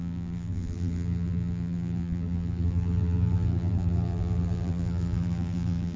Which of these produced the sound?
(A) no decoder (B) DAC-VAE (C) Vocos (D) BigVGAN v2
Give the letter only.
D